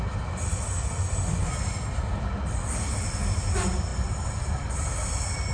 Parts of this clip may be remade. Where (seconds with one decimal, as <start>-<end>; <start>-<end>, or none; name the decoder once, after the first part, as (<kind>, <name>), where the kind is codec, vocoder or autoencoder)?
none